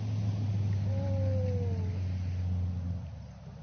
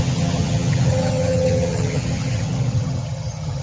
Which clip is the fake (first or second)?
second